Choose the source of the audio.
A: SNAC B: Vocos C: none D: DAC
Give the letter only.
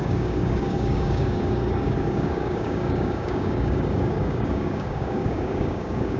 D